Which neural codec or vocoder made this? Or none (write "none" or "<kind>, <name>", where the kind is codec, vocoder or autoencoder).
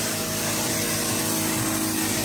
none